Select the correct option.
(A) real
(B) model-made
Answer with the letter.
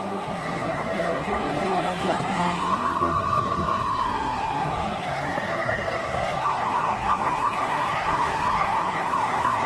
B